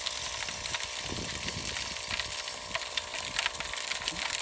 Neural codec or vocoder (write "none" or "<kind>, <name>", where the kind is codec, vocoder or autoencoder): none